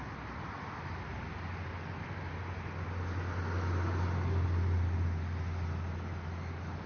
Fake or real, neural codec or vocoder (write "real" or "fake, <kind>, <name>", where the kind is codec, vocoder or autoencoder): real